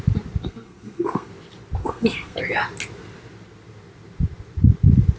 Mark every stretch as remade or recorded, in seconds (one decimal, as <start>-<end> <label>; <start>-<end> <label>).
0.0-0.4 recorded; 0.4-1.3 remade; 1.3-1.8 recorded; 1.8-2.4 remade; 2.4-5.2 recorded